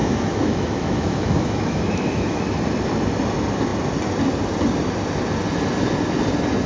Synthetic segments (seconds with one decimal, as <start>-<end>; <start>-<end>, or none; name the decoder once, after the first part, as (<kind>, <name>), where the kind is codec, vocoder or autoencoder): 0.0-2.4 (autoencoder, DAC-VAE)